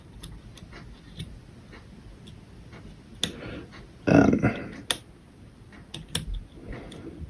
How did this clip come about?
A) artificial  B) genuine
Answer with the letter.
B